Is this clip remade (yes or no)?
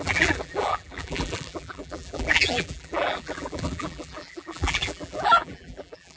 yes